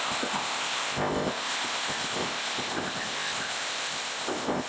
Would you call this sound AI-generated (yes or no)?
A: yes